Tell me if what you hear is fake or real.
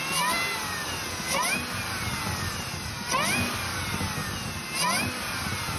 real